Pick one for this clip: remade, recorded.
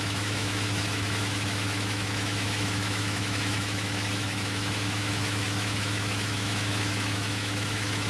remade